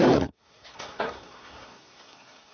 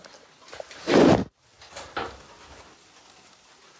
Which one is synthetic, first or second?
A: first